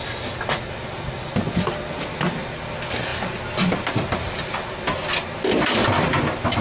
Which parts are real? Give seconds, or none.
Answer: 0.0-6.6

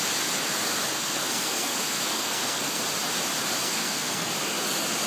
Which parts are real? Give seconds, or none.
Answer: 0.0-0.9; 2.8-3.6; 4.3-5.1

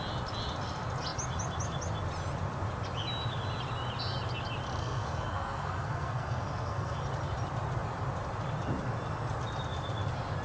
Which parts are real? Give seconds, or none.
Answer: 0.0-4.8; 7.0-10.4

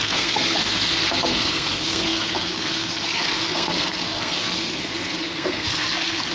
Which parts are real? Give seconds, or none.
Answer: none

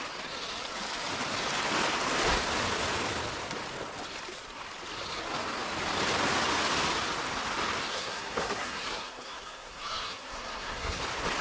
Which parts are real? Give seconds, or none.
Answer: 0.0-7.9; 11.0-11.4